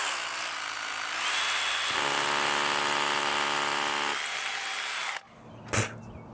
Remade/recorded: recorded